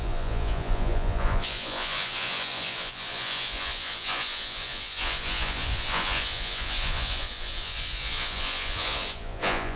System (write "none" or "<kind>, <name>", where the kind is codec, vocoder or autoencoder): vocoder, Vocos